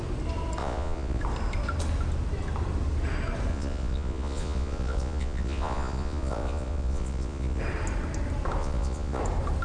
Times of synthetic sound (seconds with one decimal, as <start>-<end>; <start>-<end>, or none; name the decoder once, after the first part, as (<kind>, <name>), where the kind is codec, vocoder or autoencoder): 0.6-1.2 (vocoder, Vocos); 3.5-7.6; 8.6-9.2